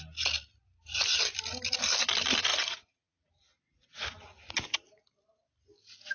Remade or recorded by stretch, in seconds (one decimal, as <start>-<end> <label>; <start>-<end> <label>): 0.0-2.5 recorded; 2.5-3.3 remade; 3.3-6.1 recorded